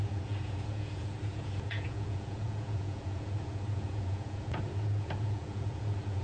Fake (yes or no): yes